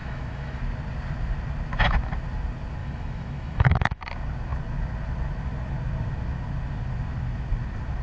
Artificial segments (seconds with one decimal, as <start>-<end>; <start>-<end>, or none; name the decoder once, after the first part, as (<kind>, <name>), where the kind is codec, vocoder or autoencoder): 0.0-0.6 (autoencoder, DAC-VAE); 2.8-4.1